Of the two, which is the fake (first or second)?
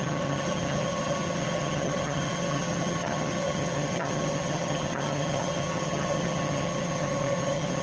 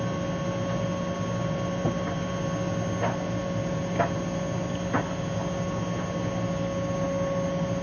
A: first